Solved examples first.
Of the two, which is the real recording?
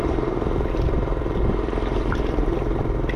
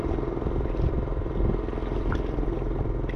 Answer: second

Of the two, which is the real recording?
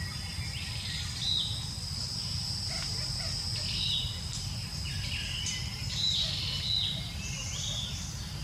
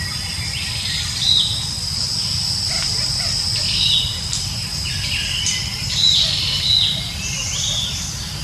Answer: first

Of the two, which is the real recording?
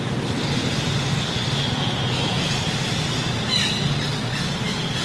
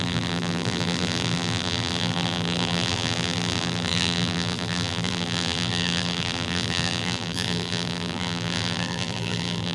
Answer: first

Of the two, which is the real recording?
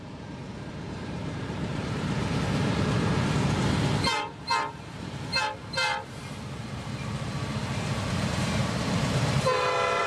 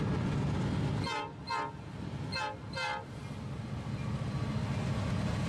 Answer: second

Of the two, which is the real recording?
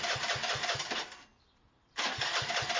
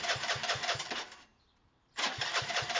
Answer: first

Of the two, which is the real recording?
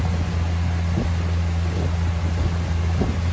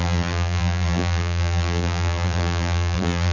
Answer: first